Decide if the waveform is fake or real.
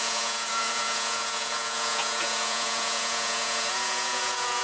fake